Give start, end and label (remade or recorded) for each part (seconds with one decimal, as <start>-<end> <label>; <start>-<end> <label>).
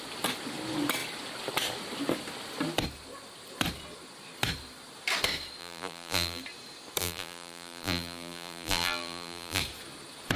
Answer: 0.0-5.6 recorded; 5.6-6.4 remade; 6.4-7.0 recorded; 7.0-9.6 remade; 9.6-10.4 recorded